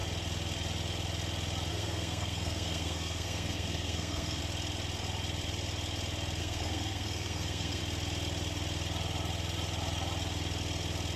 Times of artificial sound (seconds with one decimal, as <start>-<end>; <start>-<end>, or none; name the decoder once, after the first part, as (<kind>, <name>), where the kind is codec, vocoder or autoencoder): 1.7-4.4 (codec, SNAC); 6.4-7.8